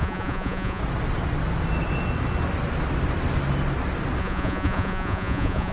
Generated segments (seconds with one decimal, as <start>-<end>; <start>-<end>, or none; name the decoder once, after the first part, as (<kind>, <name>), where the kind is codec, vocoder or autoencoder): 0.0-0.8 (vocoder, Vocos); 4.2-5.7